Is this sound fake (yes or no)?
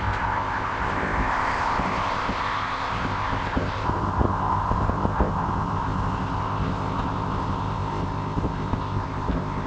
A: yes